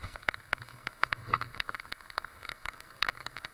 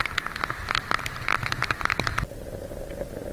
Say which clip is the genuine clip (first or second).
second